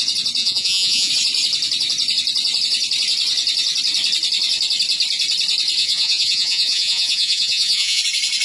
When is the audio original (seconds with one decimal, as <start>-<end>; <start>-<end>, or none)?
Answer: 0.0-0.4; 1.1-5.8; 8.0-8.4